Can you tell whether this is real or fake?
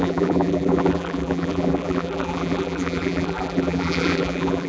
fake